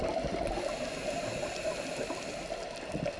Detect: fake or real real